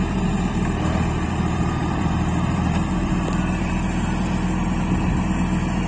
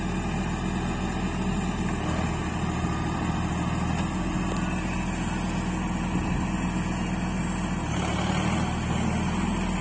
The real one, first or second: second